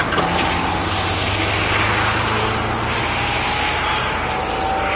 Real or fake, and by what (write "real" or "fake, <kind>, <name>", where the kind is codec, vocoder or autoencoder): real